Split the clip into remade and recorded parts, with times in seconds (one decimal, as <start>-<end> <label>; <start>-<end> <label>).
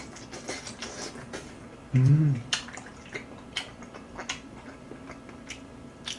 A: 0.0-1.9 recorded; 1.9-2.9 remade; 2.9-6.2 recorded